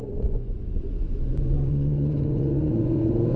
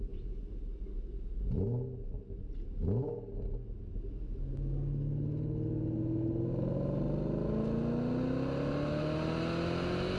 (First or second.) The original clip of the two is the second